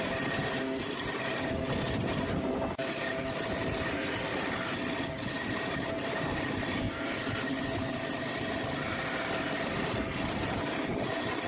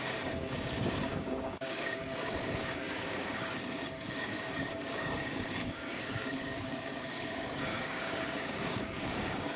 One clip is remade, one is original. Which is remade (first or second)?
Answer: second